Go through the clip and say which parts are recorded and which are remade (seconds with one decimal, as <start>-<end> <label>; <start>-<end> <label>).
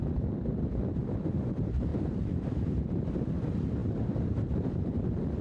0.0-1.9 recorded; 1.9-3.0 remade; 3.0-3.8 recorded; 3.8-5.0 remade; 5.0-5.4 recorded